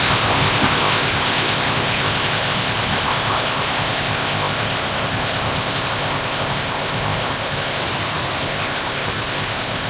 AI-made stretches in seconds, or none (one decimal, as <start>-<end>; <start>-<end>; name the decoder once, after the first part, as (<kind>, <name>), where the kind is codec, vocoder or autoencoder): 0.0-7.8 (codec, ZipCodec); 8.4-9.9